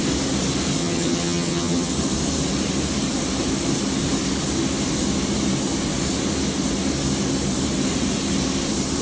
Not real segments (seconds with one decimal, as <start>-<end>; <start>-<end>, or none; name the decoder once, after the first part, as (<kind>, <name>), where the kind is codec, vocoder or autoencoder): 0.8-1.9 (vocoder, HiFi-GAN)